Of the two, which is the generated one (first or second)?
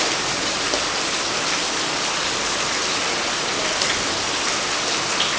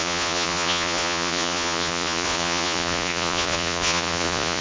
second